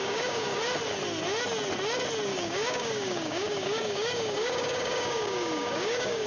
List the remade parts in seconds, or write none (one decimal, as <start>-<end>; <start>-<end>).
0.0-0.6; 2.3-6.3